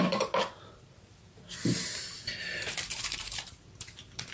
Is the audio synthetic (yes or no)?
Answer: no